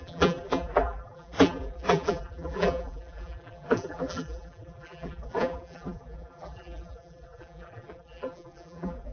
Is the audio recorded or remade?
remade